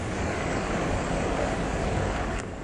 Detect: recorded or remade remade